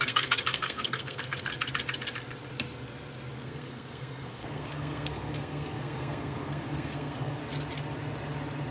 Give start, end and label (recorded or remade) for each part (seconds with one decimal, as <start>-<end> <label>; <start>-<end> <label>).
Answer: 0.0-1.5 remade; 1.5-3.3 recorded; 3.3-7.4 remade; 7.4-8.7 recorded

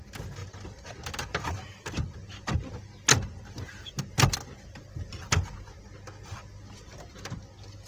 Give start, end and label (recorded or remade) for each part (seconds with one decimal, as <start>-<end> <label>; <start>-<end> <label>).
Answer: 0.0-7.9 recorded

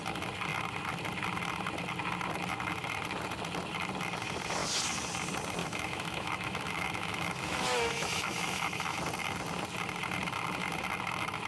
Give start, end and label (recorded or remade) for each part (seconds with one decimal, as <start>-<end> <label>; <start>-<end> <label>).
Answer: 0.0-5.6 recorded; 5.6-9.0 remade; 9.0-11.5 recorded

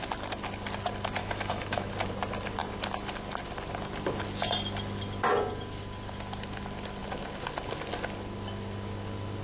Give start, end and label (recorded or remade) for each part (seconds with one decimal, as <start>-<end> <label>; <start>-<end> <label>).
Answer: 0.0-1.2 recorded; 1.2-1.9 remade; 1.9-9.4 recorded

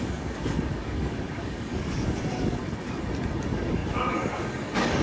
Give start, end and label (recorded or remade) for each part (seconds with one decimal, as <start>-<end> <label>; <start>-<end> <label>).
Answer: 0.0-2.6 remade; 2.6-3.4 recorded; 3.4-5.0 remade

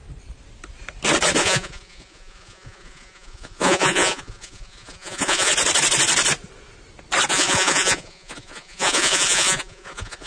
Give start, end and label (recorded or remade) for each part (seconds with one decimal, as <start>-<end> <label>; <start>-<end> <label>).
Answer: 0.0-1.4 recorded; 1.4-5.5 remade; 5.5-7.3 recorded; 7.3-10.3 remade

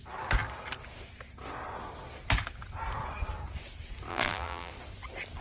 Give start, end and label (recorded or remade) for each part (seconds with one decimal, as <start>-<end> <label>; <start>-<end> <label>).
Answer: 0.0-4.1 recorded; 4.1-4.7 remade; 4.7-5.4 recorded

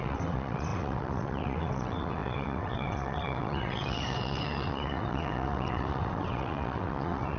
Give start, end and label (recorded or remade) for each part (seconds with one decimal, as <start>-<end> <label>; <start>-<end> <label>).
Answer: 0.0-7.4 remade